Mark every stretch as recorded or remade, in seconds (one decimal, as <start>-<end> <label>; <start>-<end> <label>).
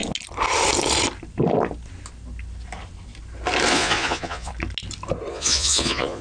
0.0-3.7 recorded; 3.7-4.5 remade; 4.5-5.3 recorded; 5.3-6.2 remade